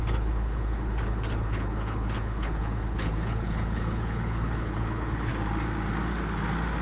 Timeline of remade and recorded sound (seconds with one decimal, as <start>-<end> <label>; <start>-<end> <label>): 0.0-5.3 remade; 5.3-6.8 recorded